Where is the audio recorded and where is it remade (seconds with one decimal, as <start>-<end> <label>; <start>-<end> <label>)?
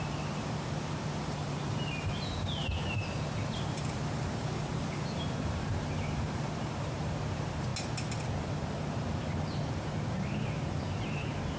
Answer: 0.0-2.6 remade; 2.6-3.5 recorded; 3.5-7.7 remade; 7.7-8.4 recorded; 8.4-11.6 remade